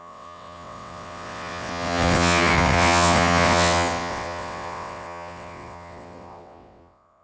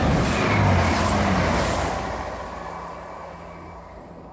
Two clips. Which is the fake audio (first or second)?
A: first